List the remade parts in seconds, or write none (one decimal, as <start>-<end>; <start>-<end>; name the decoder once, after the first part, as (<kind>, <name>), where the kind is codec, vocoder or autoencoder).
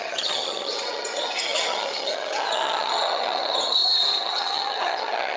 0.0-5.4 (vocoder, HiFi-GAN)